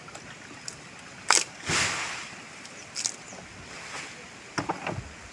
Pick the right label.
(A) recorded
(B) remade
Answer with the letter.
A